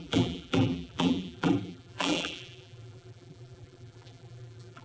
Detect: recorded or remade remade